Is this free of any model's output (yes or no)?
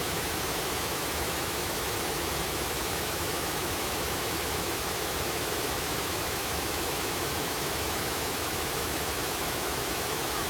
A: no